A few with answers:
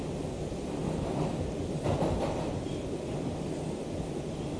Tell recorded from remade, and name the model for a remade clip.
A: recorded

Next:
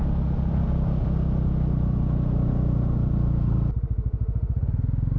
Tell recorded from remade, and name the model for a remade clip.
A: recorded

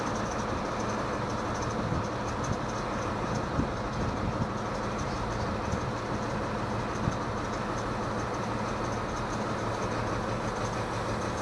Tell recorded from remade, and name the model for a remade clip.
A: recorded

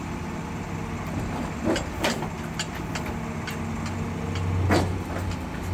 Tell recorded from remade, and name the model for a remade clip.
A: recorded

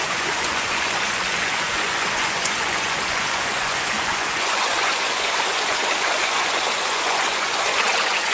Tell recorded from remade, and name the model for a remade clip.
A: remade, vocoder, Vocos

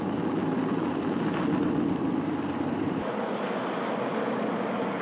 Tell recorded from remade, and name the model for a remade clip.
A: recorded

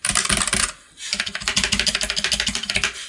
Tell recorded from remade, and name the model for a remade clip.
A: recorded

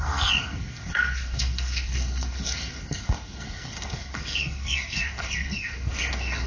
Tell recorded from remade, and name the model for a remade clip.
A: remade, codec, SNAC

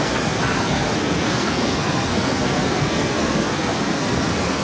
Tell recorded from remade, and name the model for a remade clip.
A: remade, codec, SNAC